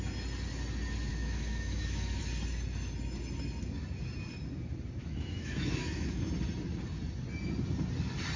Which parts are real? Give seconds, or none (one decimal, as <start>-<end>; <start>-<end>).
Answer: 0.0-1.1; 2.2-5.0; 6.3-8.4